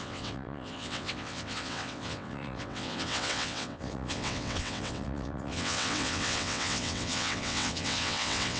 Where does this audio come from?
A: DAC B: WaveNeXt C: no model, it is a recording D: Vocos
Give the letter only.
B